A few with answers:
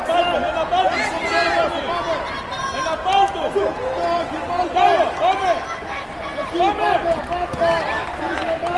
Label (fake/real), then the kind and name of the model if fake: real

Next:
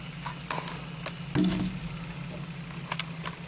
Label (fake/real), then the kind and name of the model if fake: real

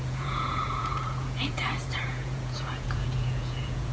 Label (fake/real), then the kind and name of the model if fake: fake, vocoder, Vocos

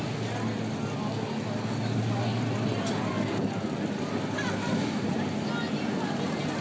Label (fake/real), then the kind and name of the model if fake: real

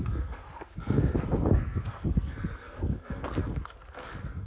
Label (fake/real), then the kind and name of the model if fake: fake, codec, SNAC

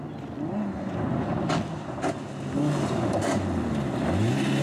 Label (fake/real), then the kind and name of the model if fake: real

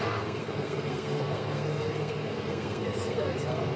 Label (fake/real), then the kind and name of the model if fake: fake, codec, SNAC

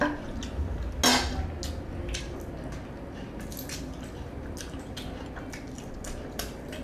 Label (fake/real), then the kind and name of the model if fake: real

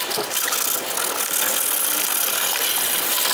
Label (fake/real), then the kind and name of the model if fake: real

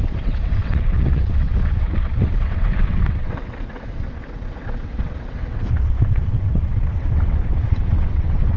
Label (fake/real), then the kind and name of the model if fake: fake, vocoder, WaveNeXt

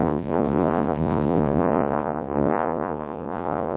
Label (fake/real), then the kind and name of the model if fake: fake, vocoder, Vocos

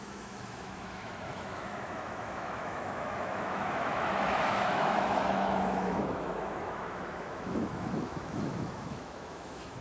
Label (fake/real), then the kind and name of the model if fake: fake, autoencoder, DAC-VAE